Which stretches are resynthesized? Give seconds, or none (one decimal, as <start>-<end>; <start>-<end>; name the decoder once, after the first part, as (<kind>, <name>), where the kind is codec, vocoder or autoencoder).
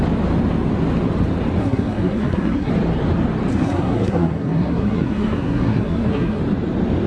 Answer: 1.6-2.7 (codec, SNAC); 3.5-6.4